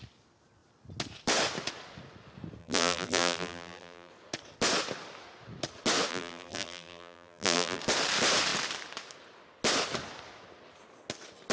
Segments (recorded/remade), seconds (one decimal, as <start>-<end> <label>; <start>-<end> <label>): 0.0-2.6 recorded; 2.6-4.1 remade; 4.1-6.1 recorded; 6.1-7.8 remade; 7.8-11.5 recorded